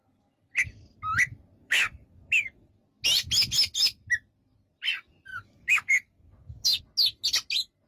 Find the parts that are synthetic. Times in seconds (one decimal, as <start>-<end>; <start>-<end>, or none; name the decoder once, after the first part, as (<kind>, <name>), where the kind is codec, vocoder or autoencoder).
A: 1.6-2.7 (codec, DAC); 5.3-6.8